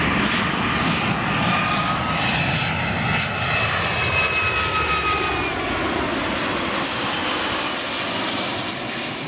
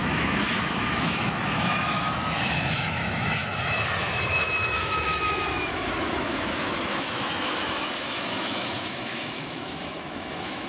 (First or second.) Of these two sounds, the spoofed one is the second